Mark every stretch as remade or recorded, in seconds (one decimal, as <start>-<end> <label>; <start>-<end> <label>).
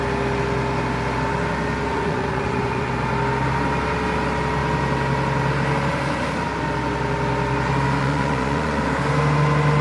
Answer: 0.0-1.9 recorded; 1.9-2.9 remade; 2.9-8.0 recorded; 8.0-8.8 remade; 8.8-9.8 recorded